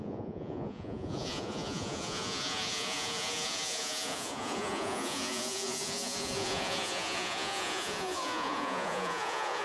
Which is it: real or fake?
fake